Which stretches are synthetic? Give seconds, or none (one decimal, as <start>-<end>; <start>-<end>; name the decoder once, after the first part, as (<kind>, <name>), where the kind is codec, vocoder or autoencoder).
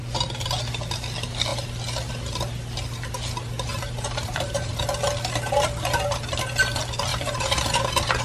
3.7-4.8 (vocoder, BigVGAN v2); 7.1-8.2